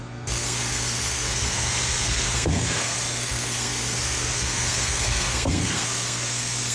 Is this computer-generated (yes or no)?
yes